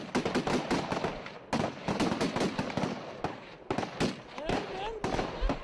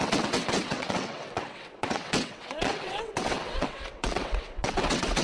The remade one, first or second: second